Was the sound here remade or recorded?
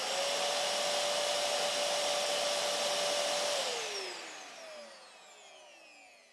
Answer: recorded